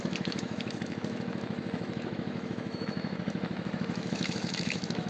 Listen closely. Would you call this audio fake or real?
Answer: fake